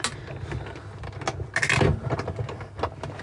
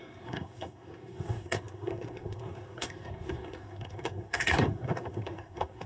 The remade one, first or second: second